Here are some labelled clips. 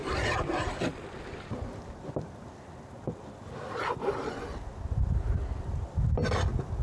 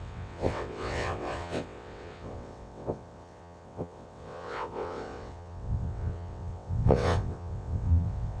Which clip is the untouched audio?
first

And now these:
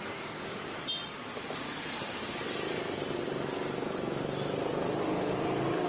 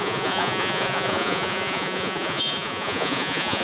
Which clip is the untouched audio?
first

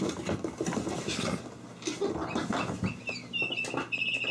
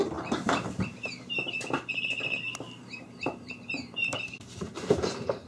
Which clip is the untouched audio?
first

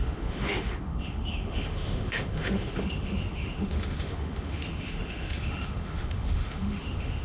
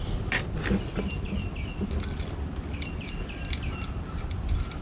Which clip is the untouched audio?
second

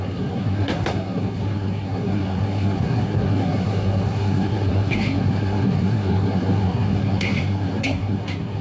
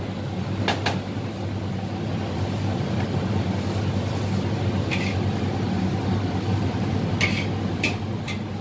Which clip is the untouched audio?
second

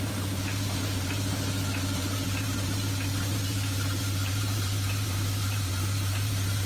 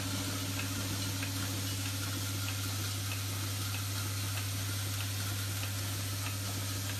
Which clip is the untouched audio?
second